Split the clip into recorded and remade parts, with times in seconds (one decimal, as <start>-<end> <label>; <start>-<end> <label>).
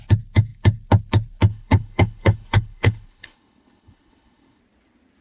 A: 0.0-1.5 recorded; 1.5-4.6 remade; 4.6-5.2 recorded